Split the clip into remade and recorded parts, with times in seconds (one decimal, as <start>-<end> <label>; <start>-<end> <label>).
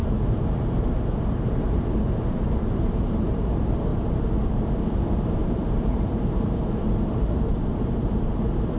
0.0-3.9 remade; 3.9-4.5 recorded; 4.5-8.8 remade